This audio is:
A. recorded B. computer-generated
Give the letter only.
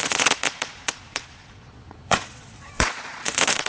B